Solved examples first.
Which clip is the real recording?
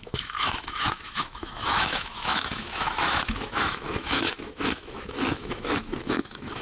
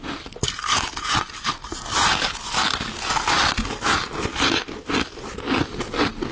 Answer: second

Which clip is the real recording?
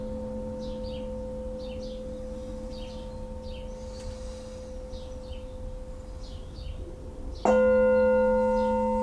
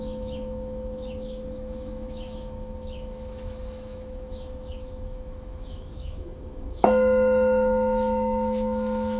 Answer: first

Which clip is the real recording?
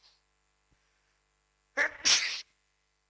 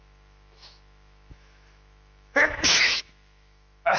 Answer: first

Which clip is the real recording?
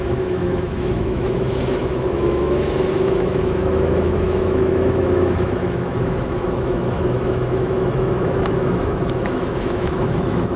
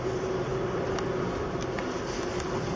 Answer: second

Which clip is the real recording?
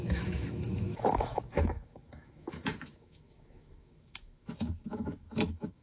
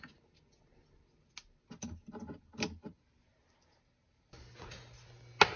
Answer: second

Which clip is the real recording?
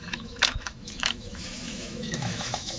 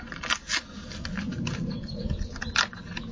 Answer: second